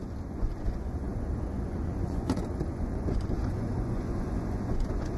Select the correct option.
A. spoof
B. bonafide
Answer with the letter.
A